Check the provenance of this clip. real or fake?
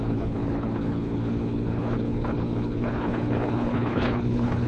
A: fake